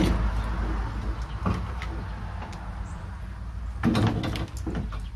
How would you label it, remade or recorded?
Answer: recorded